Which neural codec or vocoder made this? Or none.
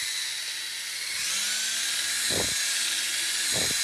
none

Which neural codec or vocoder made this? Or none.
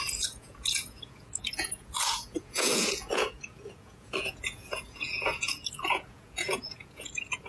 vocoder, Vocos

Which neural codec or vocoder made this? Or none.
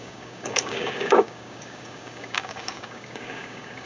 codec, DAC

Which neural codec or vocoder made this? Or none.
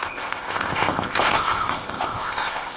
codec, ZipCodec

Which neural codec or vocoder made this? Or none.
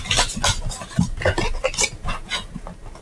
none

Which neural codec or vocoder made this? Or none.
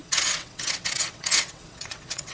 vocoder, WaveNeXt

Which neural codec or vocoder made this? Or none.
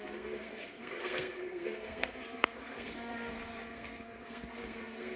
codec, SNAC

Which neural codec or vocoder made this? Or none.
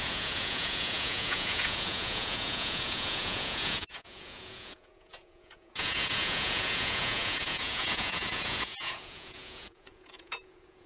vocoder, Vocos